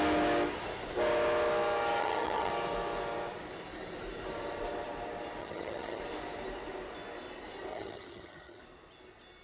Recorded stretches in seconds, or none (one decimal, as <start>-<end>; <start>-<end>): 0.0-2.0; 2.5-5.4; 6.0-7.7; 8.6-9.4